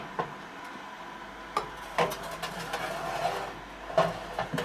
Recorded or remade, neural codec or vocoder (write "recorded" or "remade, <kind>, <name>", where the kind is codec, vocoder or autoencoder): recorded